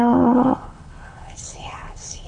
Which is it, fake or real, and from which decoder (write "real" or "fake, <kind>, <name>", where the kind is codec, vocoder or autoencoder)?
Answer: fake, codec, HILCodec